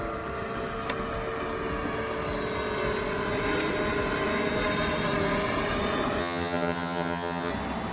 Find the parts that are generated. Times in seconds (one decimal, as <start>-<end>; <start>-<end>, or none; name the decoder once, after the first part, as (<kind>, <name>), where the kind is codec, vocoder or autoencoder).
6.2-7.5 (vocoder, HiFi-GAN)